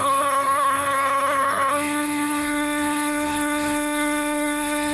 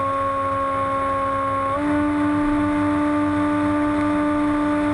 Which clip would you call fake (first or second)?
first